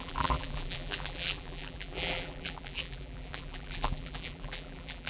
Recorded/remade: remade